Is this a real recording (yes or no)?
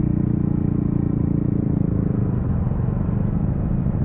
yes